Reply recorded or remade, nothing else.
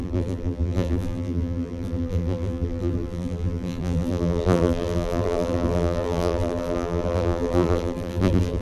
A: remade